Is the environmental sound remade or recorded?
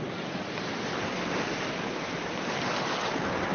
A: recorded